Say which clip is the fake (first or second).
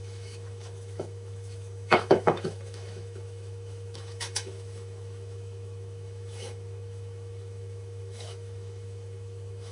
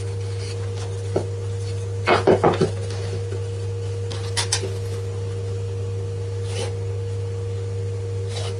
first